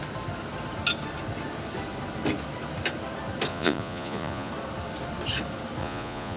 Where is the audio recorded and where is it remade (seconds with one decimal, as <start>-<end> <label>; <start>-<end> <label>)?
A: 0.0-3.5 recorded; 3.5-4.5 remade; 4.5-5.8 recorded; 5.8-6.4 remade